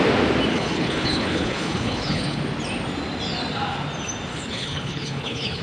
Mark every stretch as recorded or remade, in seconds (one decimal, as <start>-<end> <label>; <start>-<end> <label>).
0.0-0.5 recorded; 0.5-2.4 remade; 2.4-4.3 recorded; 4.3-5.6 remade